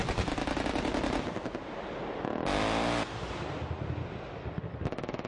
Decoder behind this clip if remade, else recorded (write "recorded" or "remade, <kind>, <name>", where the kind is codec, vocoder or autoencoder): recorded